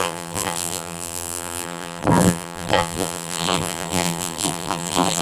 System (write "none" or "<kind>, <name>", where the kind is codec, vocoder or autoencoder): vocoder, BigVGAN v2